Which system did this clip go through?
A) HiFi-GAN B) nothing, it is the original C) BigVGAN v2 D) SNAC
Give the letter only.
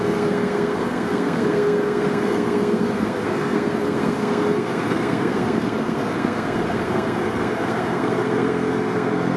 D